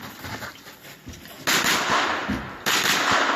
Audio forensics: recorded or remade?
recorded